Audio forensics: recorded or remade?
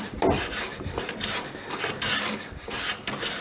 recorded